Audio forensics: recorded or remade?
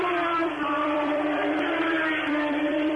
remade